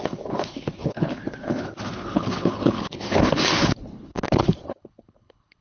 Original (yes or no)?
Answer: no